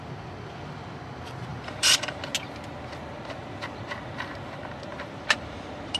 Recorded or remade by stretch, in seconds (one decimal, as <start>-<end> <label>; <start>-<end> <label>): 0.0-1.5 recorded; 1.5-2.2 remade; 2.2-4.9 recorded; 4.9-6.0 remade